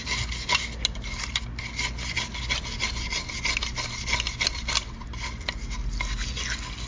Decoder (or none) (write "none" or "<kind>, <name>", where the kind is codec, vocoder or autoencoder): none